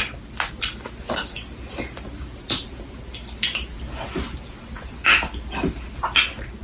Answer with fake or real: real